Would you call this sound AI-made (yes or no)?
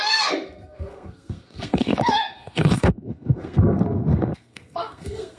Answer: yes